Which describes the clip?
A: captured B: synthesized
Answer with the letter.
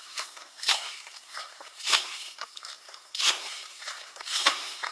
B